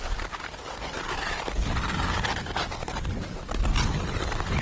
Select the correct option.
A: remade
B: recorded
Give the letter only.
B